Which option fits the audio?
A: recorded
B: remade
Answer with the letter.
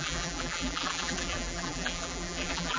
B